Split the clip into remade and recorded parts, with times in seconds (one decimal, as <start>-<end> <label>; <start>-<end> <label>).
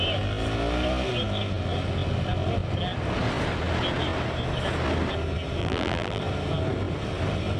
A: 0.0-5.6 recorded; 5.6-6.2 remade; 6.2-7.6 recorded